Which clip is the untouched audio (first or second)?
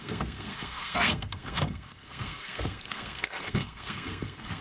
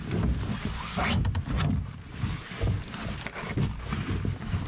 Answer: second